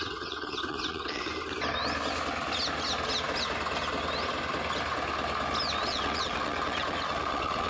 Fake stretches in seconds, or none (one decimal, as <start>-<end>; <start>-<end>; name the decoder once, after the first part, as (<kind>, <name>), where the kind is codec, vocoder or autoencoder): 0.0-1.3 (vocoder, WaveNeXt); 5.8-7.7